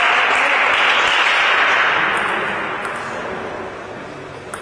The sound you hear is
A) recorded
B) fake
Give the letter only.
A